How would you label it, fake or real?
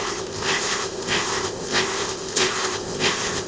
fake